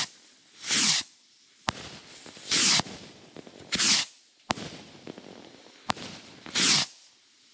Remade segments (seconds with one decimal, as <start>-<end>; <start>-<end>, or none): none